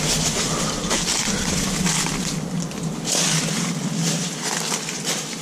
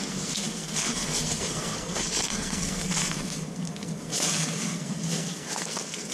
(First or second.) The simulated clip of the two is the second